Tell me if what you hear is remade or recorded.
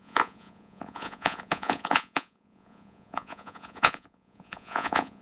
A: remade